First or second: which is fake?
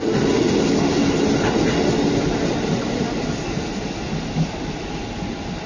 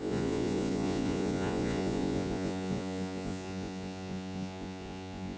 second